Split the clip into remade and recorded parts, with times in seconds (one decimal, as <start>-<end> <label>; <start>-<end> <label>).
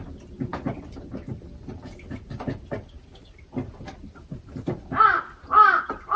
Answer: 0.0-6.2 recorded